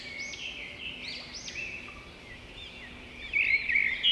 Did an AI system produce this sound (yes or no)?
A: no